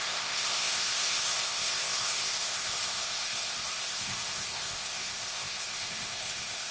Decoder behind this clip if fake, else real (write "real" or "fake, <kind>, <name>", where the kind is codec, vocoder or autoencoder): fake, codec, ZipCodec